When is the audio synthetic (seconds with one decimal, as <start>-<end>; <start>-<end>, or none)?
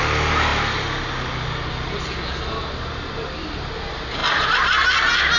none